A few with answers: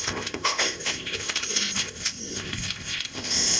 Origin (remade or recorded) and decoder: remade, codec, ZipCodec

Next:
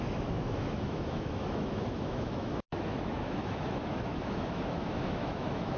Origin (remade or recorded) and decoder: remade, autoencoder, DAC-VAE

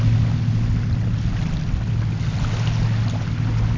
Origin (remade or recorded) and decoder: recorded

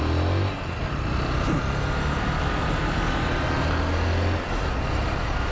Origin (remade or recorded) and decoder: recorded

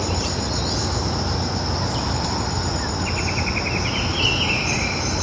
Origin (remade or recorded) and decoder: recorded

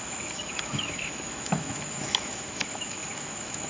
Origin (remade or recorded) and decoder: remade, autoencoder, DAC-VAE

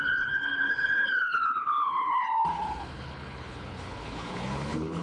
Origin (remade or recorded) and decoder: remade, codec, HILCodec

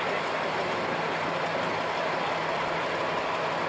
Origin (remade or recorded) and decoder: recorded